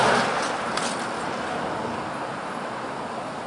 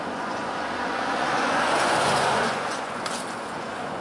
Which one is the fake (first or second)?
second